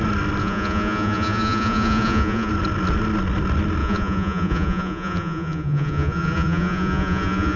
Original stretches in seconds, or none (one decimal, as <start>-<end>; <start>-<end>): 0.0-0.4; 2.5-3.8